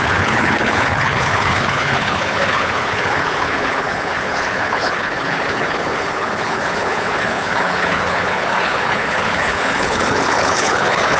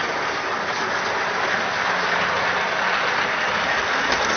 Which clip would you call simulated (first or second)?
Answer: first